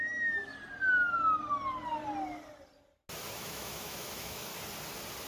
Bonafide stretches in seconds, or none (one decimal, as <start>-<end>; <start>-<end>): 0.5-3.3; 4.5-5.3